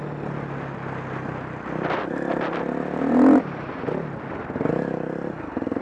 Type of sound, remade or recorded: recorded